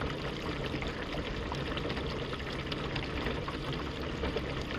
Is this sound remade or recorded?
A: recorded